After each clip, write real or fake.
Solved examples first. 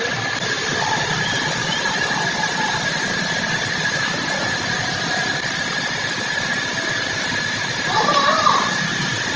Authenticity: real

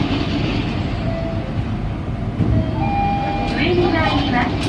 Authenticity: real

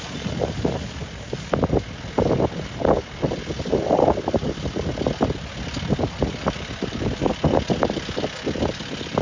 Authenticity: real